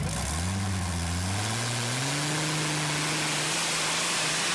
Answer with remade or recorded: recorded